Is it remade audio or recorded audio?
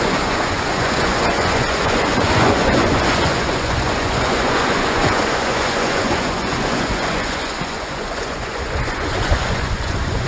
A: remade